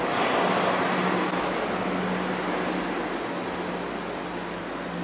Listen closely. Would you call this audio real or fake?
real